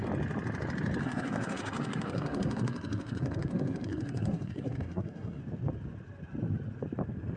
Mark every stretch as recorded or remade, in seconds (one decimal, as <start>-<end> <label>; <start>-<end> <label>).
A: 0.0-1.0 recorded; 1.0-5.4 remade; 5.4-7.4 recorded